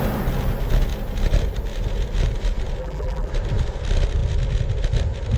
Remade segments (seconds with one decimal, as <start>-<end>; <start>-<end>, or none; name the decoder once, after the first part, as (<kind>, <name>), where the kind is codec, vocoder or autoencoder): 2.8-3.3 (vocoder, BigVGAN v2)